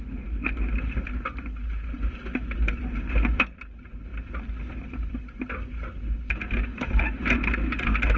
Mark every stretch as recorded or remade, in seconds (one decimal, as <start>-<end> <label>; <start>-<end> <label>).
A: 0.0-8.2 recorded